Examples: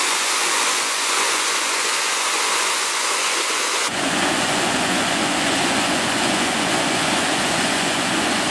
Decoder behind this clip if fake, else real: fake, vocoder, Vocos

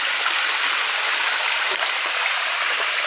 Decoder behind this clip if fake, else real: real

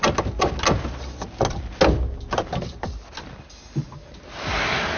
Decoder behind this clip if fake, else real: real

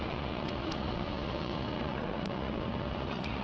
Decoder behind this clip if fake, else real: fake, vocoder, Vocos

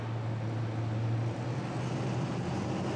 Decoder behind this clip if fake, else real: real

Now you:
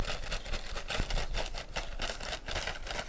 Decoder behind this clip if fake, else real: real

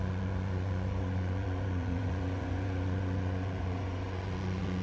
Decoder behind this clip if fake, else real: fake, vocoder, Vocos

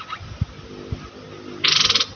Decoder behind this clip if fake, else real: real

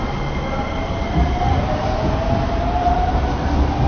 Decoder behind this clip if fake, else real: real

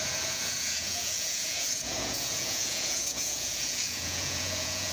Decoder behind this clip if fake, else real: fake, vocoder, Vocos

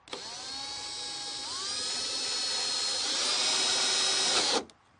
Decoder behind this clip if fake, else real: real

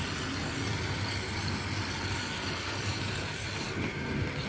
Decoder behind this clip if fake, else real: real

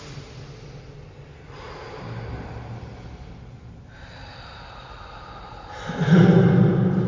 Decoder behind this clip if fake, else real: real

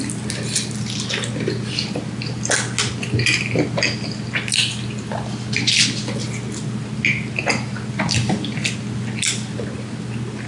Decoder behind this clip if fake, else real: real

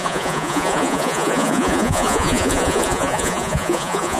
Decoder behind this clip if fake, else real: fake, vocoder, Vocos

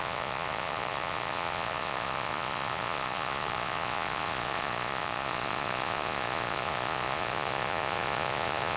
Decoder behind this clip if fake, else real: fake, vocoder, Vocos